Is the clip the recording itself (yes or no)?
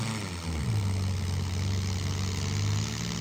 yes